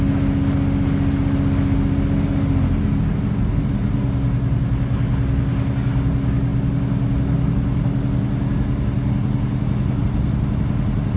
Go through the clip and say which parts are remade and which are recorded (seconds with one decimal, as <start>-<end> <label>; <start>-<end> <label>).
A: 0.0-11.2 recorded